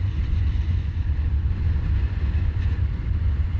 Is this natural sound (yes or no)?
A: no